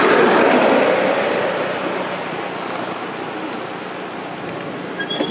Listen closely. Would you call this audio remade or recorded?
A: recorded